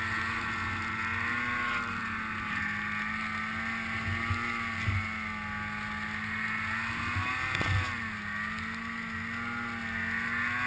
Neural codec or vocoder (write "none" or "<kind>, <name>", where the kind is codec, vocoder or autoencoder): none